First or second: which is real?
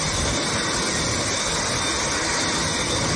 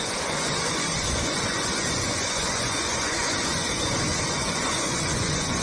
first